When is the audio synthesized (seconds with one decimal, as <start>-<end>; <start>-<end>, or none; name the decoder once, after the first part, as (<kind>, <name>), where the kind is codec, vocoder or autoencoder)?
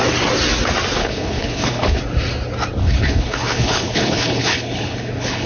1.0-2.0 (codec, HILCodec); 2.8-5.5